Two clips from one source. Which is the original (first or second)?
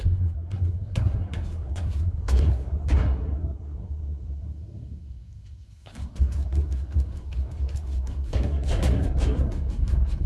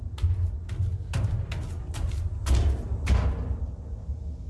second